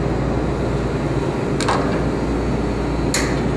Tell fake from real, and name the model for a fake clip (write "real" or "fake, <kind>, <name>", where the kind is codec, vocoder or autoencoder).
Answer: real